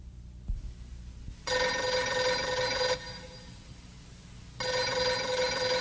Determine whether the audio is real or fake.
real